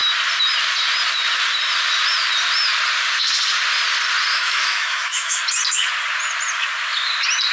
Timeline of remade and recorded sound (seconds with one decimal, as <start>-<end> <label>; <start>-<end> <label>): 0.0-4.3 recorded; 4.3-5.4 remade; 5.4-7.5 recorded